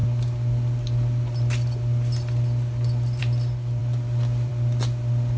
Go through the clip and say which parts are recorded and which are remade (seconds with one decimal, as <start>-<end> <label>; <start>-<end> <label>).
0.0-5.4 recorded